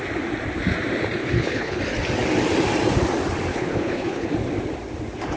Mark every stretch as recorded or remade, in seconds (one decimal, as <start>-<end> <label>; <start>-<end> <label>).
0.0-1.2 recorded; 1.2-1.8 remade; 1.8-3.5 recorded; 3.5-4.3 remade; 4.3-5.4 recorded